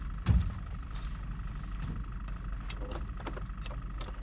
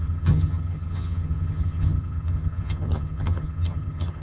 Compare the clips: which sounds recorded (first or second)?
first